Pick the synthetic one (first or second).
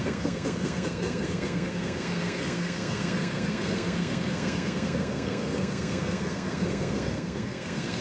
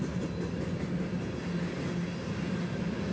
first